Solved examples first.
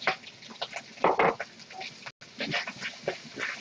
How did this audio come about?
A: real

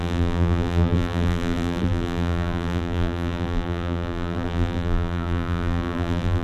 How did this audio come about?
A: fake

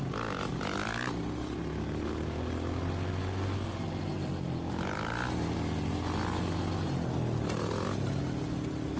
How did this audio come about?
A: real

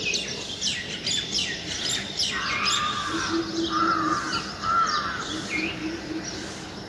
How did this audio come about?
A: real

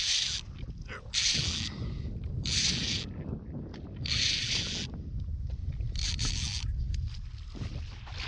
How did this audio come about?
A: real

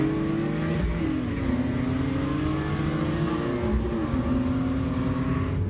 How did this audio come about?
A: real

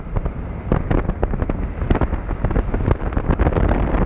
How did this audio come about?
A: real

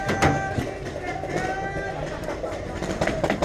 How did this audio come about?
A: real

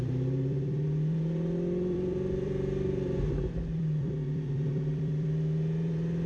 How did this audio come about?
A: fake